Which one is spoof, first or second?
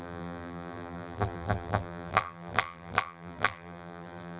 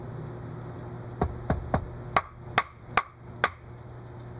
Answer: first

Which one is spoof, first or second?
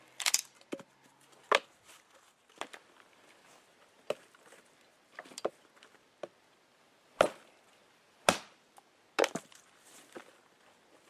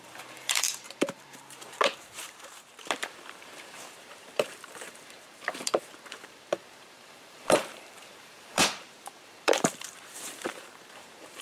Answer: second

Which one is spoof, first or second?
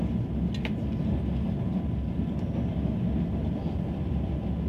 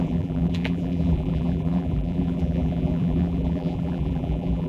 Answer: second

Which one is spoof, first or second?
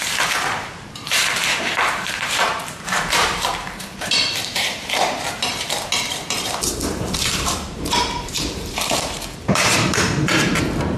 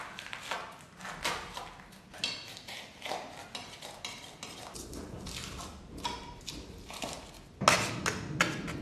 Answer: first